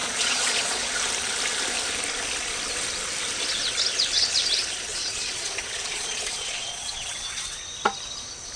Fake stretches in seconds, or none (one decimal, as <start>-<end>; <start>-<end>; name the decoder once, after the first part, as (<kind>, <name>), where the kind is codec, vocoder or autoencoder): 0.0-1.0 (vocoder, Vocos); 4.9-7.6